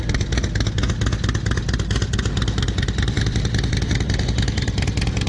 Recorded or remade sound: recorded